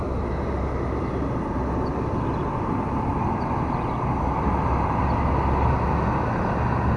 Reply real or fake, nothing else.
real